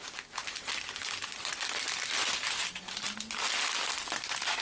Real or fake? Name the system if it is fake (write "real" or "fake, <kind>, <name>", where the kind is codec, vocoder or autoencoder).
real